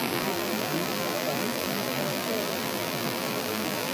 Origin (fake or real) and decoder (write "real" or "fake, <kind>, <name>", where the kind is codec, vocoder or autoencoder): fake, vocoder, BigVGAN v2